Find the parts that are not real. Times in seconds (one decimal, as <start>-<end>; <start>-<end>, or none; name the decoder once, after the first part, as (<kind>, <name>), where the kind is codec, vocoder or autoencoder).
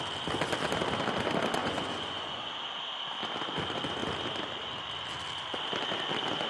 1.6-2.5 (vocoder, Vocos)